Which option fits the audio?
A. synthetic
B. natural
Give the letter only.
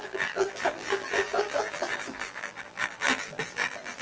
A